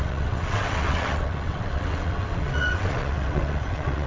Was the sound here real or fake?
fake